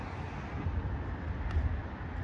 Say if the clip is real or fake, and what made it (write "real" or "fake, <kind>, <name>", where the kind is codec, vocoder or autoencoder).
real